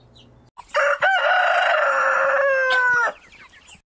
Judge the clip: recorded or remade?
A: recorded